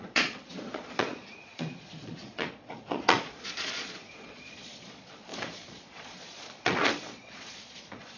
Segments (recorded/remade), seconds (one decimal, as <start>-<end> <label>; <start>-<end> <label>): 0.0-8.2 remade